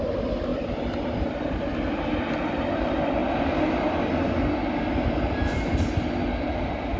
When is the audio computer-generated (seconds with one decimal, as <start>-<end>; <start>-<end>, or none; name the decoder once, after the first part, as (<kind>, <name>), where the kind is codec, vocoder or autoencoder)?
none

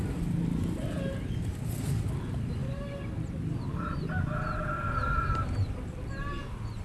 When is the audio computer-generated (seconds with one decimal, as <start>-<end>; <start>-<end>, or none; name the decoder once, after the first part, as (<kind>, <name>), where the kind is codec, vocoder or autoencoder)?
none